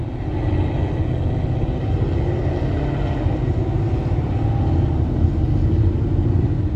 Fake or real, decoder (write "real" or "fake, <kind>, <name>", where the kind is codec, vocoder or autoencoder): real